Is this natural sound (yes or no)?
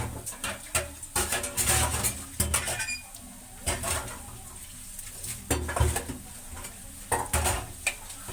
yes